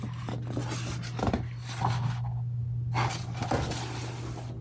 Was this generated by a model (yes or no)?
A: no